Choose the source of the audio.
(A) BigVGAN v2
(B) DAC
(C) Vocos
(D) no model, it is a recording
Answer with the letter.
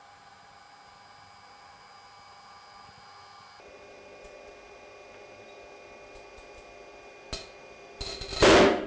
D